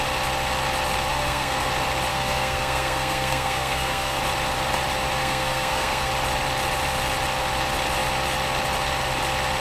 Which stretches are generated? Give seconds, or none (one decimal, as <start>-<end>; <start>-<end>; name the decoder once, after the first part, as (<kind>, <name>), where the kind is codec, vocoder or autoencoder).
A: 1.1-1.7 (codec, SNAC); 2.1-4.2; 5.2-6.1